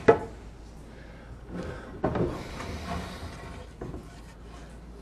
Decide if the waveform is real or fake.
real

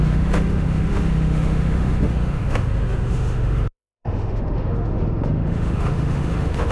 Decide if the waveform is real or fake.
fake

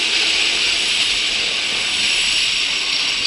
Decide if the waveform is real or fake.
real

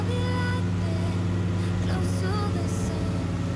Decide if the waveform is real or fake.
real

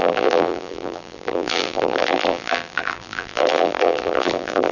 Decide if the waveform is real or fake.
fake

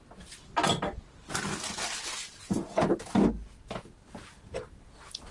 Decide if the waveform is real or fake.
real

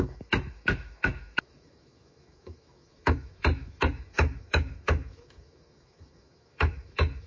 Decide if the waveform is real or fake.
fake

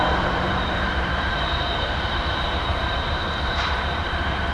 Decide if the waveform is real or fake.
fake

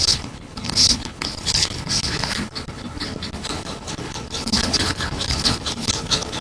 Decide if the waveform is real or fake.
fake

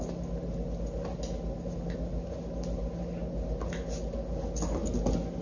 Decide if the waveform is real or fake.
real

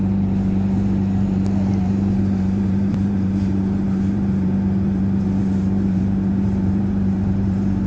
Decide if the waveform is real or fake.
fake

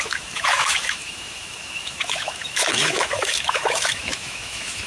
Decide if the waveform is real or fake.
fake